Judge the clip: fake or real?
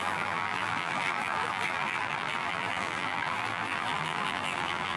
fake